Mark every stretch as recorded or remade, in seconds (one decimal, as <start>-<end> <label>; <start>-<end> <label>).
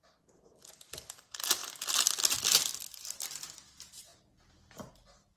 0.0-5.4 recorded